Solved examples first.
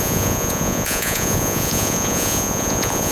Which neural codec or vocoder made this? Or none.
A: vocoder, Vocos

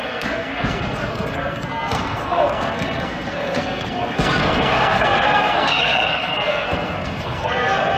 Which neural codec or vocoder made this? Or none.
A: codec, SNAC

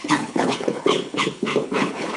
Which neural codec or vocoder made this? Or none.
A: codec, HILCodec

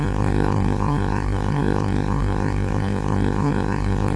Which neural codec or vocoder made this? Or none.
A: codec, SNAC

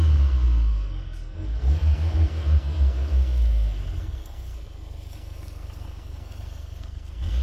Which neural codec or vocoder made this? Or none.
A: codec, SNAC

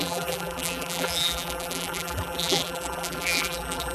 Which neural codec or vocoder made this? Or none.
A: vocoder, BigVGAN v2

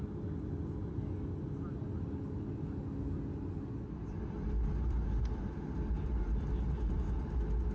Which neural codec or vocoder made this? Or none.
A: none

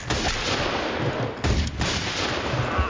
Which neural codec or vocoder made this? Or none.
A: none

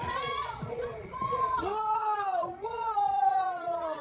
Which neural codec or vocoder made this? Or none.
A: vocoder, Vocos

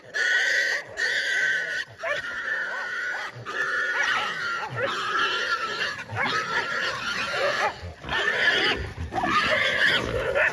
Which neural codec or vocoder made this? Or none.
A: none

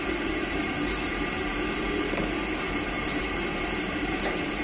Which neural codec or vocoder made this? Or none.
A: vocoder, BigVGAN v2